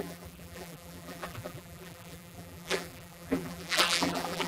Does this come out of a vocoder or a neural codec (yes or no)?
yes